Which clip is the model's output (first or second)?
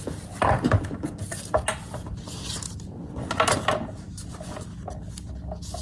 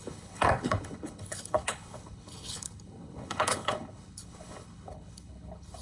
second